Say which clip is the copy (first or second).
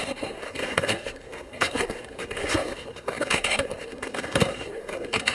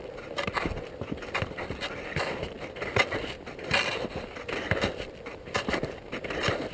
first